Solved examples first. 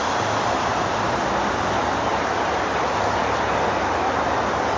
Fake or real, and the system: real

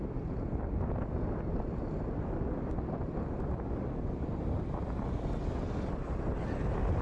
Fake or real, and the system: real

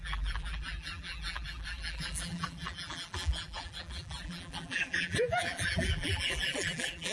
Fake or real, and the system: fake, vocoder, BigVGAN v2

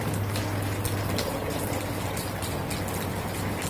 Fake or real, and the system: real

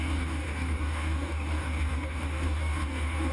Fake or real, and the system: fake, codec, DAC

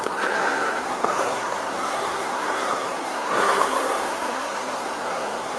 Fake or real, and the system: fake, codec, SNAC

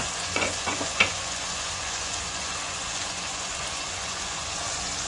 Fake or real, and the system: fake, vocoder, Vocos